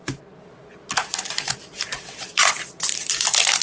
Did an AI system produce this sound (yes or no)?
yes